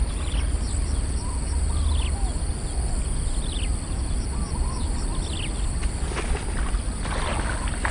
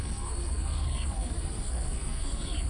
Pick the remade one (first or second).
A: second